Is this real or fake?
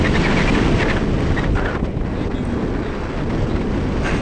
real